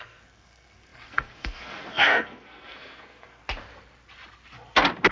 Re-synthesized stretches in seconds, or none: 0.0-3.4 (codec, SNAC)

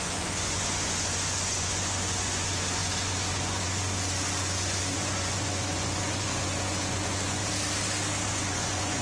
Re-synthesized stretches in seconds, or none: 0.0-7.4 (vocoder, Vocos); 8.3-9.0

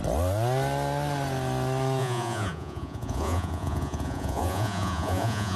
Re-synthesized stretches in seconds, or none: 2.0-5.6 (vocoder, Vocos)

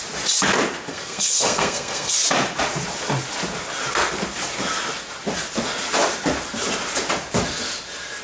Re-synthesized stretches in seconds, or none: 0.9-2.1 (codec, SNAC)

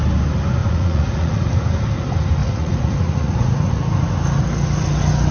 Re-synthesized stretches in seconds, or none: 0.6-1.5 (vocoder, Vocos); 2.4-3.7

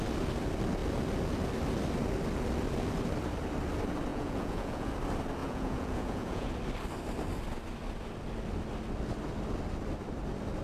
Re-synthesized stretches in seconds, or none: 4.1-4.9 (vocoder, Vocos); 5.4-6.5

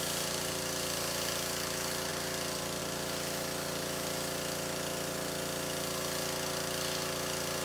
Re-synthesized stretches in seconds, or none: none

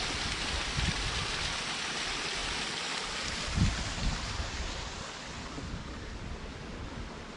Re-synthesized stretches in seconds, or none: none